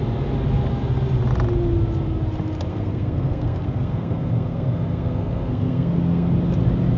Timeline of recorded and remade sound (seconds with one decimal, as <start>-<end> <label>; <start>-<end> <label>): 0.0-2.7 recorded; 2.7-6.3 remade; 6.3-7.0 recorded

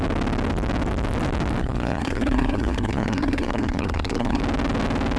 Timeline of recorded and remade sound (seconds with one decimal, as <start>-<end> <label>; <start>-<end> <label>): 0.0-1.6 recorded; 1.6-4.4 remade; 4.4-5.2 recorded

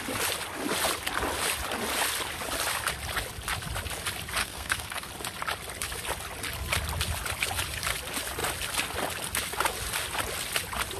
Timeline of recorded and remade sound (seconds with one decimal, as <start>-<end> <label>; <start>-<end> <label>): 0.0-4.4 recorded; 4.4-5.1 remade; 5.1-11.0 recorded